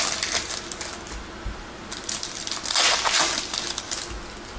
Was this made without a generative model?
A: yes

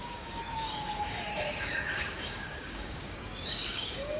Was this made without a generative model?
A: no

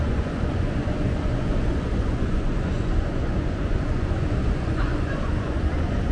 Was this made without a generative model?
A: no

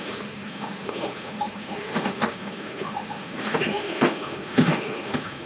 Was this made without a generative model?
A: no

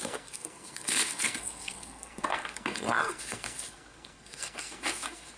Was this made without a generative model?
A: no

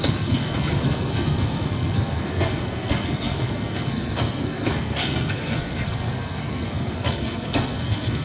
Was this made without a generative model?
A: no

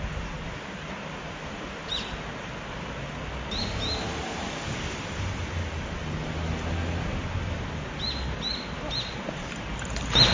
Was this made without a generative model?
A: yes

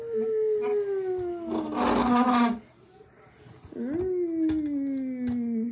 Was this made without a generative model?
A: yes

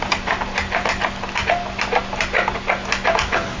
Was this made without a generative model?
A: yes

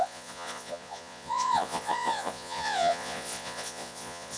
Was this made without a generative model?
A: no